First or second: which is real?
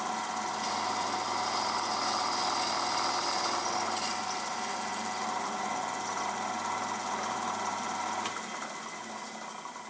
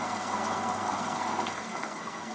first